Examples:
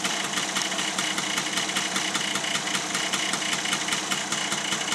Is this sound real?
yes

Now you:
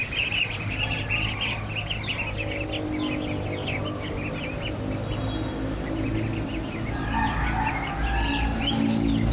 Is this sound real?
yes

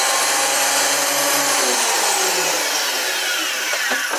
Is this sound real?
yes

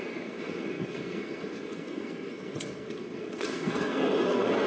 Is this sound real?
no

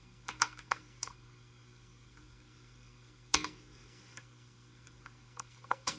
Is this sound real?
no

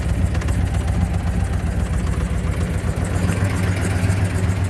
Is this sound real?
yes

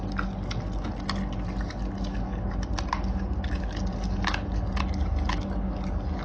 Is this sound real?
yes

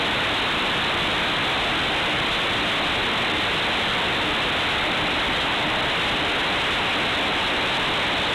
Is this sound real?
yes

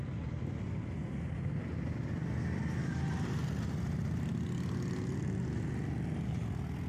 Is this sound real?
yes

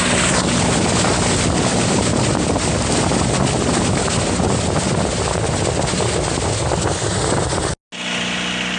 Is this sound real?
yes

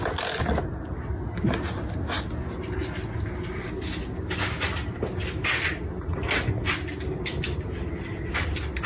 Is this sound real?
yes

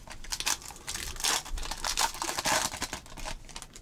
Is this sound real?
yes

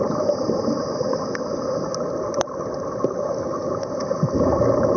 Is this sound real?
yes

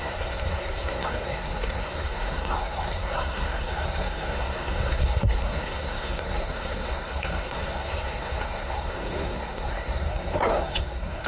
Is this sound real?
no